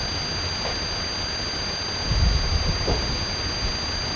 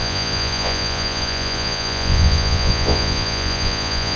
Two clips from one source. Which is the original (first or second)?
first